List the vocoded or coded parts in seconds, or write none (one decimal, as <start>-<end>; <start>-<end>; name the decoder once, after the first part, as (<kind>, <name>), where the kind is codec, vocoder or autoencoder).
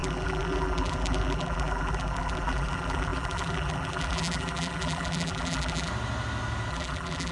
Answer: 0.0-5.9 (vocoder, BigVGAN v2); 6.7-7.3